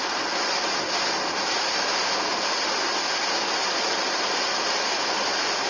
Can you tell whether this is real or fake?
real